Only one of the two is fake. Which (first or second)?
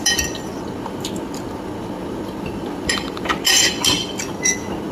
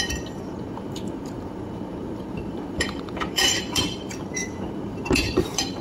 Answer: second